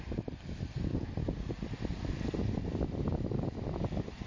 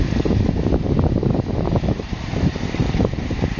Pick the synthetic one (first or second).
second